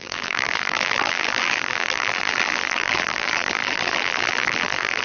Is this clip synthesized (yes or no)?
yes